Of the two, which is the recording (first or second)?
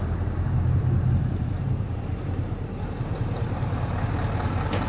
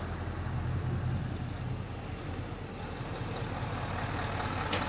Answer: second